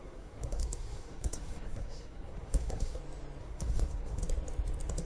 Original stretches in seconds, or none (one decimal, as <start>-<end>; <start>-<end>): 3.0-3.4; 4.2-5.0